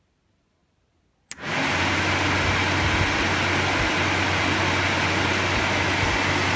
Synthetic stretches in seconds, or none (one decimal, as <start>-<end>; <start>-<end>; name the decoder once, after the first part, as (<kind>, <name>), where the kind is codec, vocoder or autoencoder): none